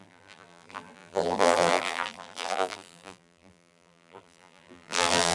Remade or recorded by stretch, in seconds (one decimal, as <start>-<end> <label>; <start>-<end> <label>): 0.0-5.3 remade